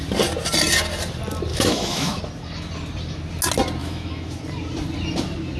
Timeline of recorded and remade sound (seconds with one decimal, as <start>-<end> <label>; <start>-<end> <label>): 0.0-1.5 recorded; 1.5-2.2 remade; 2.2-3.8 recorded; 3.8-4.4 remade; 4.4-5.6 recorded